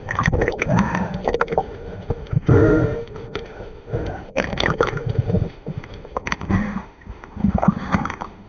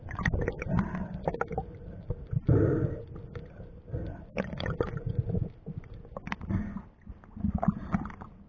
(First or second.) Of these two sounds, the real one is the second